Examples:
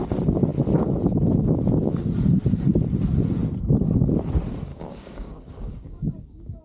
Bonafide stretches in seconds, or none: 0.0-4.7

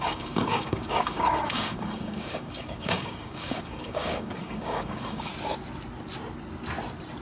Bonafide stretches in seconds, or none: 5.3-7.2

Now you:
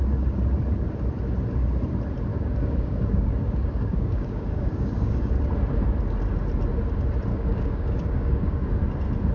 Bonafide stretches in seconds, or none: 0.0-2.3; 5.3-7.3; 8.7-9.3

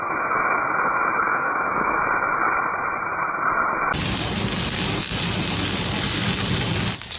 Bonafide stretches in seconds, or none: 0.0-1.3; 2.0-7.2

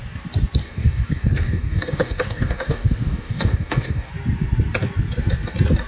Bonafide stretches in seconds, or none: 0.0-0.6; 4.1-5.9

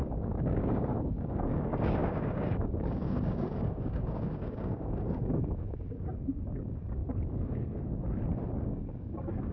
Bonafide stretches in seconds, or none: 7.0-8.6

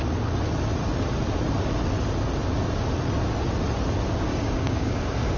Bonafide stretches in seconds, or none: 0.0-4.3